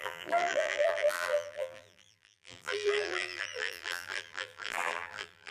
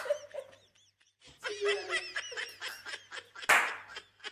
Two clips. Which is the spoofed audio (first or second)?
first